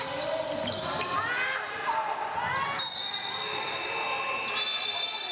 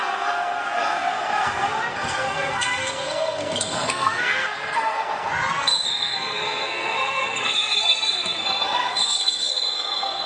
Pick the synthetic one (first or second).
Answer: second